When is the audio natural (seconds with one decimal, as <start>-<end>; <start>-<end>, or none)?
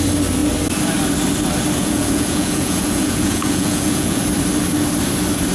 0.0-1.8; 4.2-5.5